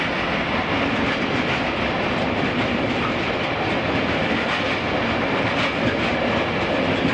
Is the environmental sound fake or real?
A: real